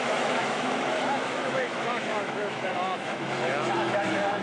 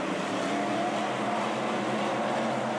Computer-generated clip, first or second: first